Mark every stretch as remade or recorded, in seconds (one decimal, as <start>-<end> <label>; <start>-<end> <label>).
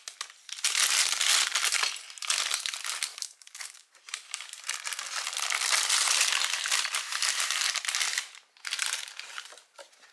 0.0-3.1 recorded; 3.1-3.9 remade; 3.9-10.1 recorded